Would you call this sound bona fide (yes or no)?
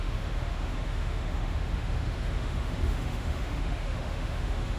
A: no